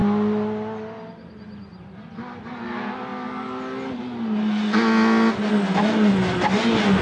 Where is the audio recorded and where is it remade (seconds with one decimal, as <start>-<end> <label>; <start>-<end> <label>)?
0.0-7.0 recorded